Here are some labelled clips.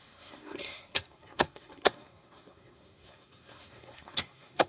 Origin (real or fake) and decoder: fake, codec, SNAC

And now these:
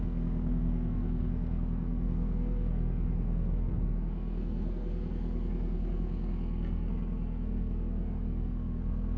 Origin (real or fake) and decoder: fake, codec, SNAC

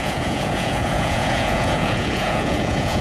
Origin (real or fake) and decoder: fake, vocoder, Vocos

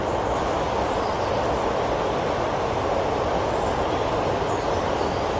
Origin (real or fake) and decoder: real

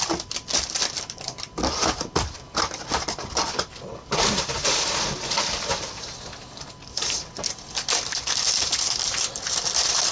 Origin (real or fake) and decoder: fake, vocoder, BigVGAN v2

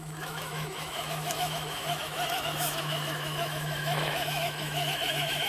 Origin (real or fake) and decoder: fake, autoencoder, DAC-VAE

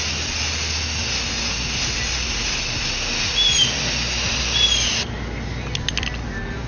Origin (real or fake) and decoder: real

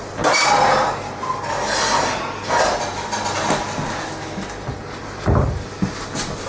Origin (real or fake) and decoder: real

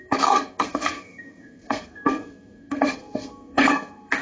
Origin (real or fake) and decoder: fake, codec, SNAC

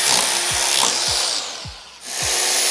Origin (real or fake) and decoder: real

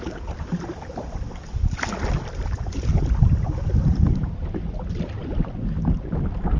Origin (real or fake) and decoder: real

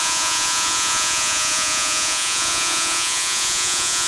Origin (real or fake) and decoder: fake, vocoder, Vocos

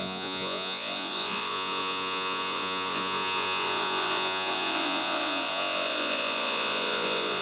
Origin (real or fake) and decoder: fake, vocoder, Vocos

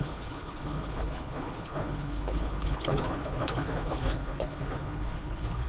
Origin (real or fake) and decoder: fake, codec, HILCodec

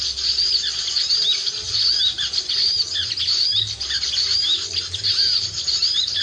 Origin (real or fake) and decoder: real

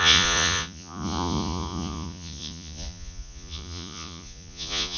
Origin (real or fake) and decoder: fake, vocoder, Vocos